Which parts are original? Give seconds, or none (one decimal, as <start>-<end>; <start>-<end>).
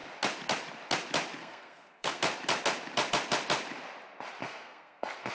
0.0-1.4; 2.2-4.4